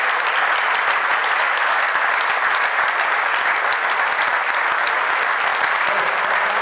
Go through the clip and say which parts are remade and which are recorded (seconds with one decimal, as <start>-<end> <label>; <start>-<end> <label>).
0.0-1.1 remade; 1.1-5.1 recorded; 5.1-5.5 remade; 5.5-6.0 recorded; 6.0-6.6 remade